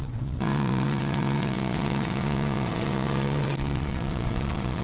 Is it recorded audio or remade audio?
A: remade